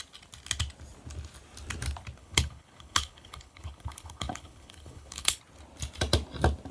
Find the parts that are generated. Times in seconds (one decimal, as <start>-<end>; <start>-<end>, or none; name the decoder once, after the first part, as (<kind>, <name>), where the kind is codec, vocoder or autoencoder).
2.2-5.4 (codec, HILCodec)

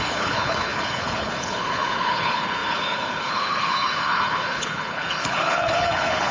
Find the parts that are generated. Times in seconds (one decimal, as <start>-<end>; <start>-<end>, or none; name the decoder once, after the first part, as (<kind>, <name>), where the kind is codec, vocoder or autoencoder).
0.0-6.3 (codec, HILCodec)

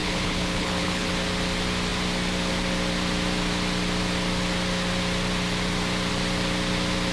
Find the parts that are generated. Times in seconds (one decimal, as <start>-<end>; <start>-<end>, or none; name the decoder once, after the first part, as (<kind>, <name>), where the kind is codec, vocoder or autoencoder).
0.0-1.1 (codec, HILCodec)

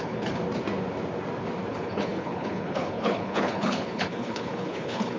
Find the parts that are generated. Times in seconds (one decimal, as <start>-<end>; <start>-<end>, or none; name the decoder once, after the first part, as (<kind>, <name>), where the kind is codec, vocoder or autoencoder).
0.0-0.4 (codec, HILCodec); 1.7-5.2